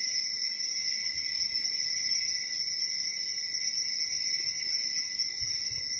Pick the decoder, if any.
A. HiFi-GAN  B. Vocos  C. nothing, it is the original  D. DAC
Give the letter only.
C